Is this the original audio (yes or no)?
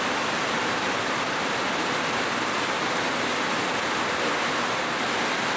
yes